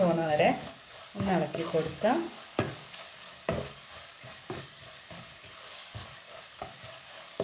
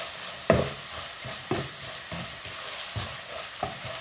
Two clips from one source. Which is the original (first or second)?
second